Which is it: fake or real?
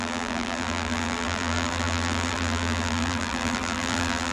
fake